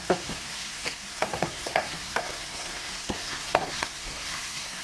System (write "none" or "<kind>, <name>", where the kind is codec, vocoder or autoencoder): codec, SNAC